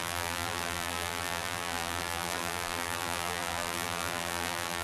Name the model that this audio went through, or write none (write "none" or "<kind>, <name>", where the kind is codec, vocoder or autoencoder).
vocoder, BigVGAN v2